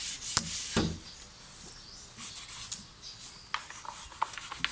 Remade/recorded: recorded